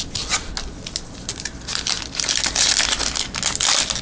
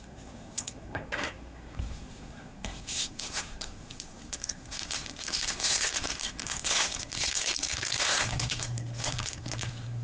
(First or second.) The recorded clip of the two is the first